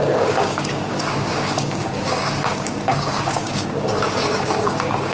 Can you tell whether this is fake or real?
fake